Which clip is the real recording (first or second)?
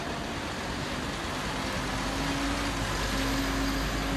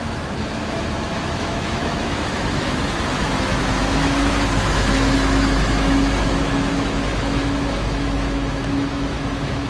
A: first